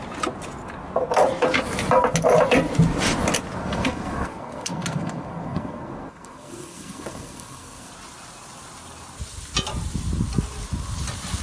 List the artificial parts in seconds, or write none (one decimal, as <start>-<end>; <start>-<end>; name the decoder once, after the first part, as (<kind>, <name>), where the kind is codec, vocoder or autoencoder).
3.6-7.9 (codec, SNAC)